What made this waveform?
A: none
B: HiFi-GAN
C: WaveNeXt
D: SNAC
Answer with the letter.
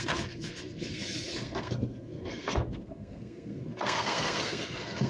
D